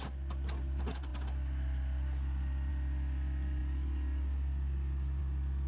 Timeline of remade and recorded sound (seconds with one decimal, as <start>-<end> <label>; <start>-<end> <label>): 0.0-5.7 recorded